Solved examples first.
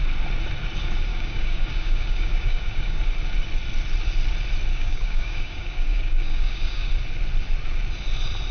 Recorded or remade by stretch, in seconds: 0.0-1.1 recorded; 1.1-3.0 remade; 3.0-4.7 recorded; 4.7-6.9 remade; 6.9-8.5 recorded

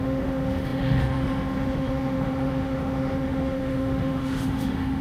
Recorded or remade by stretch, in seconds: 0.0-5.0 remade